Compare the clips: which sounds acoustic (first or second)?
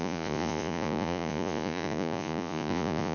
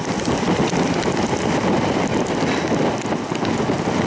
second